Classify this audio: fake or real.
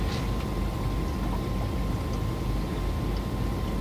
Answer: real